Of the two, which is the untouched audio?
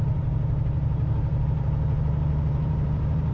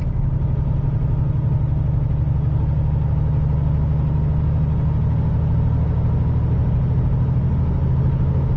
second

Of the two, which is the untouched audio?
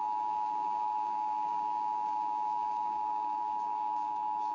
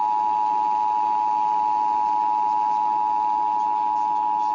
second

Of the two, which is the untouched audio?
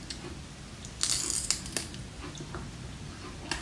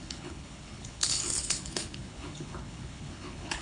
first